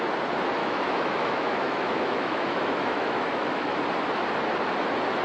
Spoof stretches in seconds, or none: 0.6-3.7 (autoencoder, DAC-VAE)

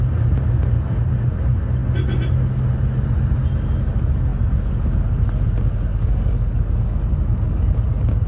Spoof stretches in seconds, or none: 5.9-7.7 (codec, DAC)